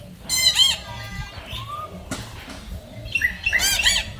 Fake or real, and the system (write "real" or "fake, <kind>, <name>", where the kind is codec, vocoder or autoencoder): real